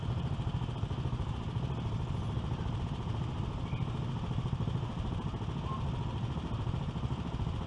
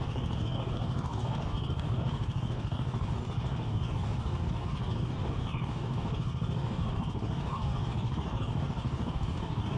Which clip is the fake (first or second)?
second